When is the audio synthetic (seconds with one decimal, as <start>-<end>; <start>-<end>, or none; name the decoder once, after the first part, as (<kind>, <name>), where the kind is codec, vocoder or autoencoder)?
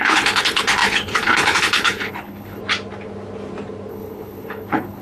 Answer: 0.0-2.6 (codec, HILCodec); 3.9-5.0